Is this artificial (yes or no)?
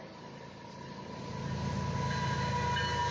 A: no